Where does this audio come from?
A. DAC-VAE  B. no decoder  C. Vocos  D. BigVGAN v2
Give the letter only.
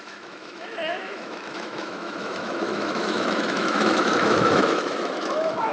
A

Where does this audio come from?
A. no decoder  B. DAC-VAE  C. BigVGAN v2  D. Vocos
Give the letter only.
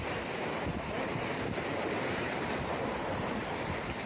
C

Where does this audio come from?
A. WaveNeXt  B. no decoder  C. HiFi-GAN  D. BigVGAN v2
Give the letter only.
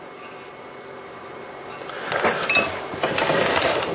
B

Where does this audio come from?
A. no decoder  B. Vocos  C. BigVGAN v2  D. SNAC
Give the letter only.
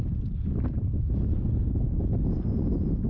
A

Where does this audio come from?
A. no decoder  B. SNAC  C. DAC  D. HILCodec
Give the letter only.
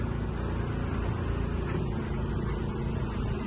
A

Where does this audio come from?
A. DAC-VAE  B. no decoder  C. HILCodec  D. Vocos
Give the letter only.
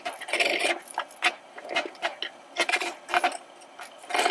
B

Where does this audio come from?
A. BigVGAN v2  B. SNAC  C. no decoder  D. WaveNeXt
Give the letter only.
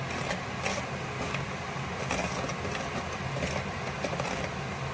C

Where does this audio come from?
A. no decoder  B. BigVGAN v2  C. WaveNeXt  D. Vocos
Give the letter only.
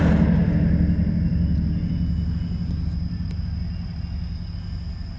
A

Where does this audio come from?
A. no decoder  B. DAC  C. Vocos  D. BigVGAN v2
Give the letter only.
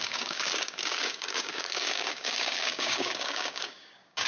B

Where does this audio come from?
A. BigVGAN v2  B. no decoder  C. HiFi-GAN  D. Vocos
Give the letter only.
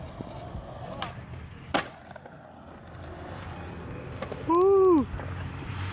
B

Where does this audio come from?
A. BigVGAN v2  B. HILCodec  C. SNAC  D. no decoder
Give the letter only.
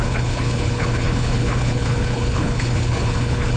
B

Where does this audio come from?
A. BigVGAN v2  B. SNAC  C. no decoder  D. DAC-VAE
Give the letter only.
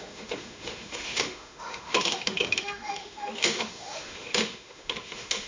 D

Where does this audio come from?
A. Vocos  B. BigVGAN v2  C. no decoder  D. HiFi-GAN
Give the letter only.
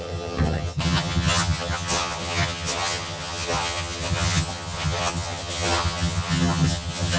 D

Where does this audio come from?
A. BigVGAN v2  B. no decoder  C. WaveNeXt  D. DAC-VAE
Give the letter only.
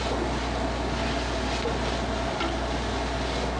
B